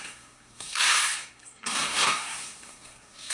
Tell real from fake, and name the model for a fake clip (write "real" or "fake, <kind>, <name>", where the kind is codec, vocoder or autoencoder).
fake, codec, SNAC